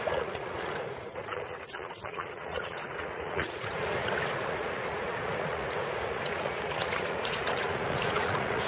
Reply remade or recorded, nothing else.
remade